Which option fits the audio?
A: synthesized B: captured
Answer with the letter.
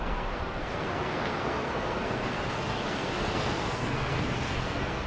A